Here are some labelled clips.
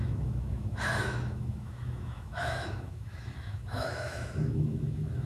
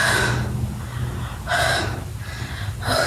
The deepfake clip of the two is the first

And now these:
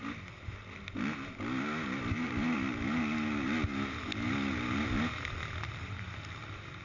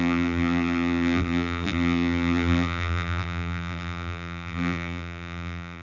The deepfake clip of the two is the second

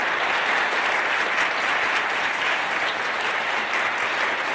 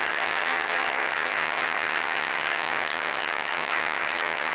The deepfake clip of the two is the second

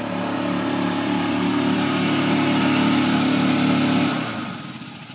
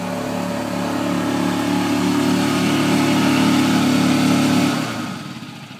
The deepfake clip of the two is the first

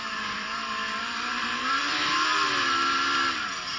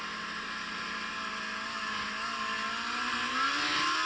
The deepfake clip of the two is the first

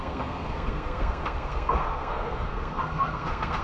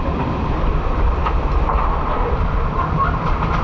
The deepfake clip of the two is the first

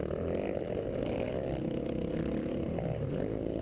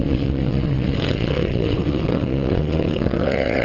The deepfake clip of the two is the second